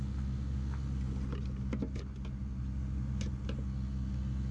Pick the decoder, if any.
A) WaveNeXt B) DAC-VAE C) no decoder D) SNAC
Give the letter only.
C